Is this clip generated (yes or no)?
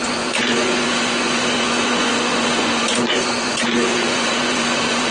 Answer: yes